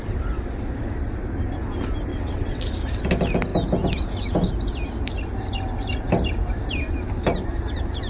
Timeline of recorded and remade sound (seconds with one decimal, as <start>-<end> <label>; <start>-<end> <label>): 0.0-2.1 recorded; 2.1-2.6 remade; 2.6-8.1 recorded